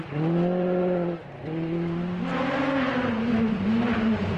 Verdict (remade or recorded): recorded